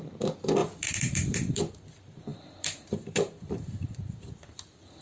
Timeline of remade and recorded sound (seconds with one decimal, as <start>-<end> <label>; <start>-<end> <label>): 0.0-0.6 recorded; 0.6-1.6 remade; 1.6-2.3 recorded; 2.3-4.3 remade; 4.3-5.0 recorded